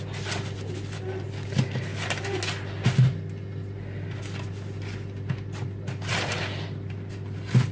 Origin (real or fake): real